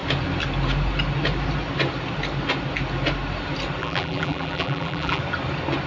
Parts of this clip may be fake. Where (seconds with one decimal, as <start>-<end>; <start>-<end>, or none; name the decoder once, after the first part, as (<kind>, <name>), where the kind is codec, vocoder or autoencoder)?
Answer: 3.8-5.2 (vocoder, BigVGAN v2)